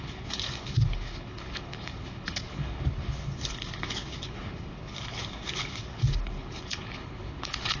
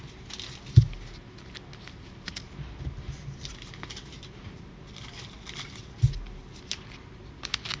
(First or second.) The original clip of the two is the second